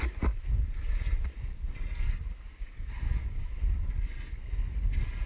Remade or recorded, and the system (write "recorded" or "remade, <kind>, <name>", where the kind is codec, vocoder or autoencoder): recorded